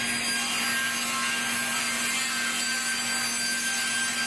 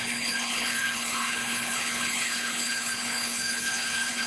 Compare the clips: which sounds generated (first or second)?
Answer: second